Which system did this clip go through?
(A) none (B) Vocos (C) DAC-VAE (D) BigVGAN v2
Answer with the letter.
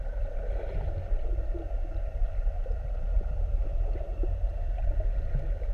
A